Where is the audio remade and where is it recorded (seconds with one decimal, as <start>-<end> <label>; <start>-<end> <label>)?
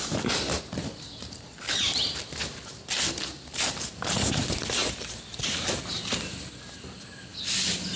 0.0-8.0 recorded